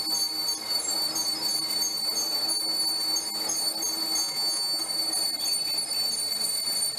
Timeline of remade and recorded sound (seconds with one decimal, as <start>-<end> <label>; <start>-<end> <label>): 0.0-4.2 recorded; 4.2-4.8 remade; 4.8-7.0 recorded